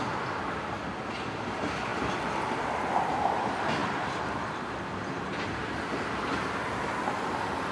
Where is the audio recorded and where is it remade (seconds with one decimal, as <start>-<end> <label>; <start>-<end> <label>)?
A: 0.0-7.7 recorded